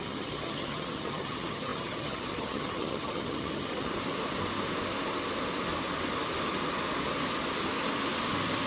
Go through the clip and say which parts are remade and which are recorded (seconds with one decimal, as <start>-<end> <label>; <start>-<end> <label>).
0.0-3.9 remade; 3.9-8.7 recorded